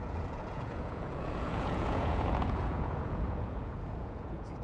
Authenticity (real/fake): fake